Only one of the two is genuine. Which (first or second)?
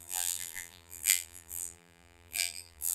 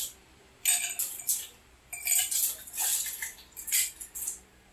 second